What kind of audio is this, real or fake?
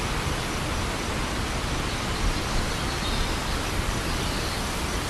real